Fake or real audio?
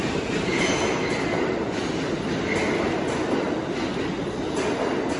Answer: real